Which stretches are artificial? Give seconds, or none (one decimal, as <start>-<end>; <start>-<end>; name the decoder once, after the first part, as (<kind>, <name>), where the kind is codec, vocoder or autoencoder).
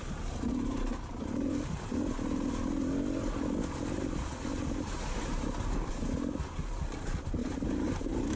4.5-5.9 (vocoder, BigVGAN v2); 7.4-8.4